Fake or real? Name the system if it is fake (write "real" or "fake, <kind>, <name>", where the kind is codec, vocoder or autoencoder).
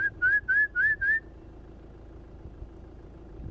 real